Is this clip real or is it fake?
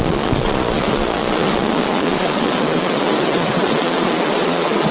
fake